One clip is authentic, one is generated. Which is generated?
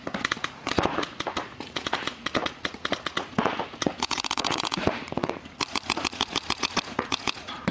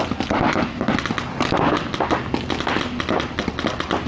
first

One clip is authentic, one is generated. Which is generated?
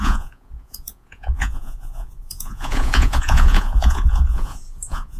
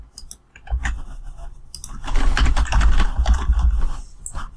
first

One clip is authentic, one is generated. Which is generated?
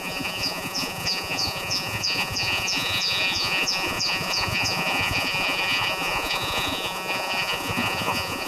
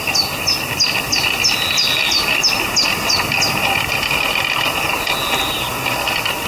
first